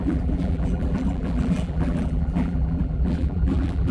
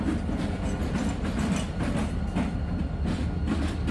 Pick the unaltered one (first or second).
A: second